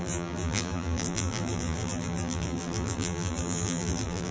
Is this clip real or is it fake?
fake